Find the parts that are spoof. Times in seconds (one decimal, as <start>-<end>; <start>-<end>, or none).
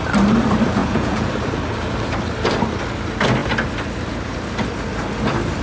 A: 0.8-1.3